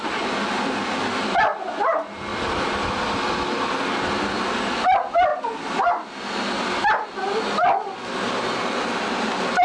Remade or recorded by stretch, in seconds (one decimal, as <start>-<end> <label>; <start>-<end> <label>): 0.0-9.6 recorded

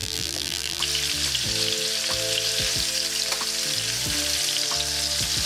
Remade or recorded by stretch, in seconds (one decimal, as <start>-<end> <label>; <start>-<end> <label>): 0.0-0.8 remade; 0.8-5.5 recorded

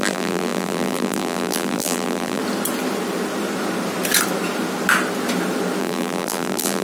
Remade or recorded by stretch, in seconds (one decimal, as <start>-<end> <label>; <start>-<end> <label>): 0.0-2.4 remade; 2.4-5.8 recorded; 5.8-6.8 remade

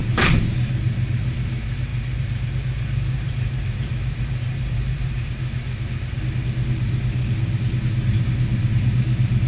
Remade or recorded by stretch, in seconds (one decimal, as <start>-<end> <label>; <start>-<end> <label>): 0.0-0.7 remade; 0.7-1.9 recorded; 1.9-5.3 remade; 5.3-9.5 recorded

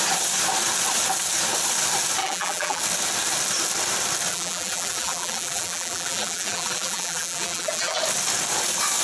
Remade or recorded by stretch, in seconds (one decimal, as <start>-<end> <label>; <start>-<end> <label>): 0.0-2.2 recorded; 2.2-2.8 remade; 2.8-4.3 recorded; 4.3-8.0 remade; 8.0-9.0 recorded

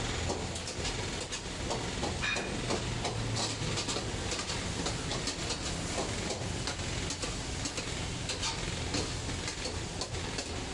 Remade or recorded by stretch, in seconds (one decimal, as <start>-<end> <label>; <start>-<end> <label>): 0.0-10.7 recorded

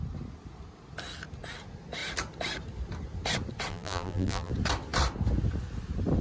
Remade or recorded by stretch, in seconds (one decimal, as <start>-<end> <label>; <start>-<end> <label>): 0.0-3.7 recorded; 3.7-4.5 remade; 4.5-6.2 recorded

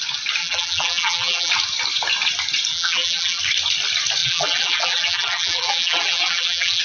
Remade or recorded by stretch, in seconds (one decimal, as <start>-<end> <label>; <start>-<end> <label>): 0.0-0.4 recorded; 0.4-1.5 remade; 1.5-2.7 recorded; 2.7-3.4 remade; 3.4-4.2 recorded; 4.2-6.8 remade